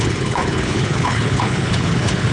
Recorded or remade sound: remade